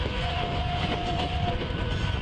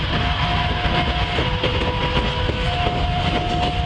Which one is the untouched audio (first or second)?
second